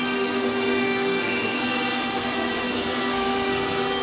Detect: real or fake fake